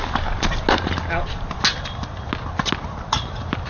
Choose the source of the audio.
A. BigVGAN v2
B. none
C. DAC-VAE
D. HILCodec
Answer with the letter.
B